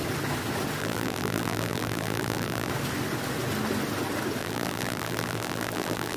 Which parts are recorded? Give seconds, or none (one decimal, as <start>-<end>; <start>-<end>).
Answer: 0.0-0.8; 2.7-4.4